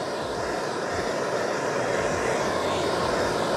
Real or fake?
fake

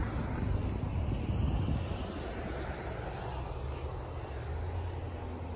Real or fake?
real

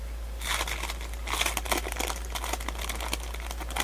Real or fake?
real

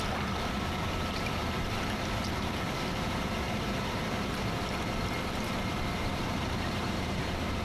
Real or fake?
fake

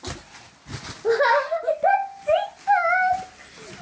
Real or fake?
real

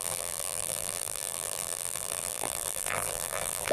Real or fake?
fake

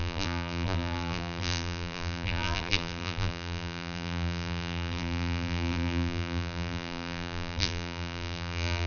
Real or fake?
fake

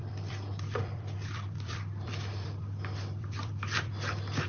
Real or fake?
fake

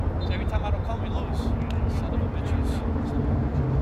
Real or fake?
real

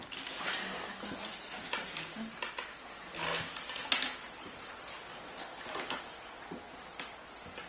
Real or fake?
real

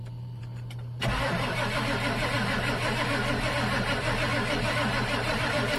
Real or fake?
fake